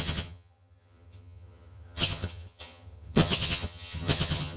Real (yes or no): no